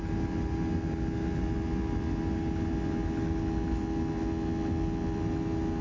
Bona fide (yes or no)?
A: yes